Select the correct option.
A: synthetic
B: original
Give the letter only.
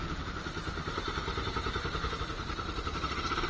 B